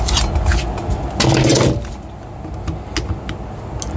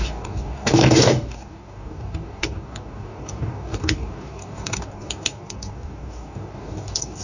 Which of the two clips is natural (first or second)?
first